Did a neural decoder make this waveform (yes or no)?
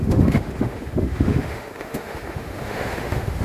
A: yes